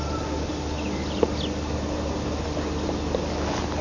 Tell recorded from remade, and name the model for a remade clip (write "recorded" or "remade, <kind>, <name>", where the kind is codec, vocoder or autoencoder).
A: recorded